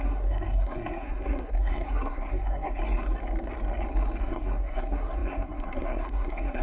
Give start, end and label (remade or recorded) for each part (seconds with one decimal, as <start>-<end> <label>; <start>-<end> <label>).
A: 0.0-2.8 remade; 2.8-4.2 recorded; 4.2-6.6 remade